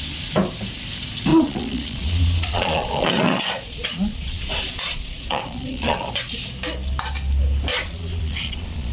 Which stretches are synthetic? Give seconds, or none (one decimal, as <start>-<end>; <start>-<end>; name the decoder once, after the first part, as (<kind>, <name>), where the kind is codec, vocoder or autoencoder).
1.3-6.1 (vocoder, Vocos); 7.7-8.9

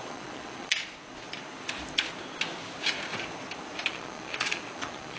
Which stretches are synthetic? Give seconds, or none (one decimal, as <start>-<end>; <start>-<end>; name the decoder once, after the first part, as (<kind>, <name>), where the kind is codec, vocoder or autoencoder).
0.0-0.8 (vocoder, Vocos); 3.9-5.2

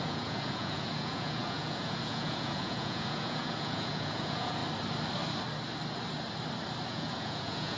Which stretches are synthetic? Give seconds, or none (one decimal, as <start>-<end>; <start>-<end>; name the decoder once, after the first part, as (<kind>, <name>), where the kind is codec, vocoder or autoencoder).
0.0-4.6 (vocoder, Vocos); 6.9-7.8

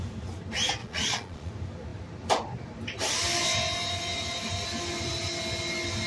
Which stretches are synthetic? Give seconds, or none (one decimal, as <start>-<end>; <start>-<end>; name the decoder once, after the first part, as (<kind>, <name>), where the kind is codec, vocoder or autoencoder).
0.8-1.5 (vocoder, Vocos)

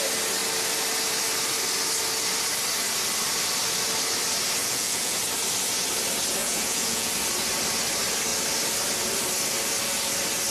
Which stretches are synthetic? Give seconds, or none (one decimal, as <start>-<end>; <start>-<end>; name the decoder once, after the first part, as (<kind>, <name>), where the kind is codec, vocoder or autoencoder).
4.6-5.2 (vocoder, Vocos); 6.4-7.1

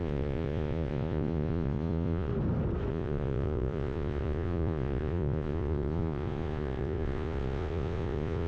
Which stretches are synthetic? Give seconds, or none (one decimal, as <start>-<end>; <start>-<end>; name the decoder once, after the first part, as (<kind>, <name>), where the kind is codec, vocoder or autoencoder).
0.0-2.3 (vocoder, Vocos); 2.9-8.5